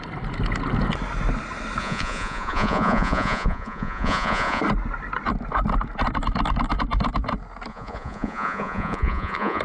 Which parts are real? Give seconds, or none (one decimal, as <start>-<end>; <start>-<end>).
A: 0.0-1.8; 4.6-7.7